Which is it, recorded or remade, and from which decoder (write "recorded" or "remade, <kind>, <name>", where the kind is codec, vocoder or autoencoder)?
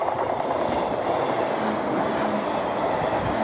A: recorded